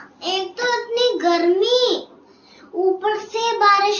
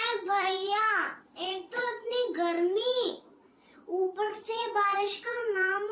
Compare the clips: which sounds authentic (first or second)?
first